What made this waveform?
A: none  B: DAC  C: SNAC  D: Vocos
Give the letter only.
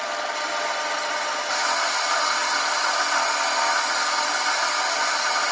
A